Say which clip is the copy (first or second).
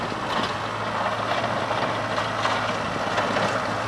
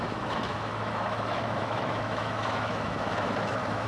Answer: second